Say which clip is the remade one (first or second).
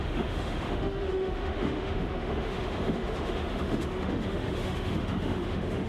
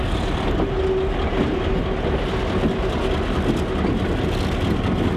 first